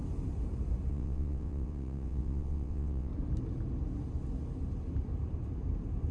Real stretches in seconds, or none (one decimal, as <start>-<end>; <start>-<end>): 0.0-0.9; 3.1-6.1